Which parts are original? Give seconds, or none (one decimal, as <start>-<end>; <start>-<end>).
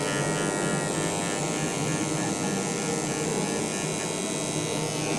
0.0-5.2